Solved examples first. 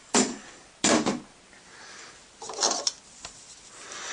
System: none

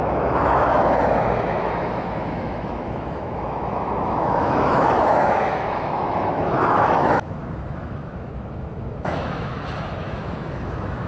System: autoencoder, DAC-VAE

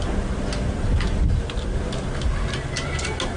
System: none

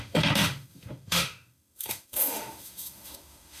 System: autoencoder, DAC-VAE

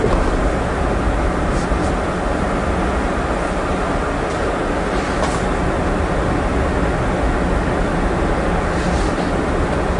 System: none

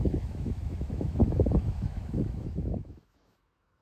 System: autoencoder, DAC-VAE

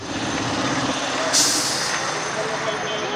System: none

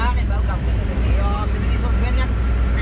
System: none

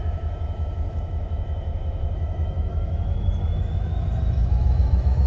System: autoencoder, DAC-VAE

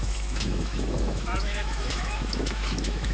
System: autoencoder, DAC-VAE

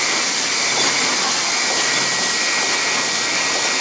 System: none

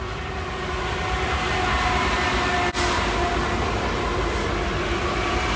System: none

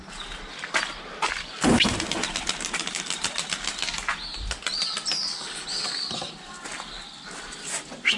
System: none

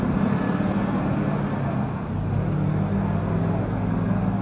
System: none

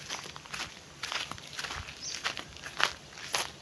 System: none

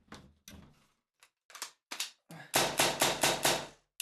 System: none